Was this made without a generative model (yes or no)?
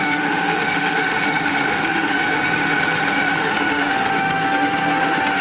no